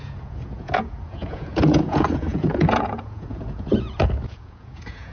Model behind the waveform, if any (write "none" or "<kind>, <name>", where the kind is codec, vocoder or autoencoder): vocoder, Vocos